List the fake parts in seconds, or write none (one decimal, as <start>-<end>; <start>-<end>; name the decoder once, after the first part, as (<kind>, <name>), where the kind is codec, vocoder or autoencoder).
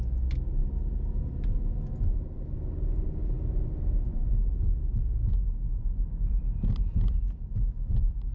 none